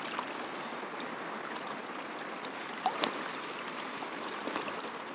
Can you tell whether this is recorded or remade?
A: remade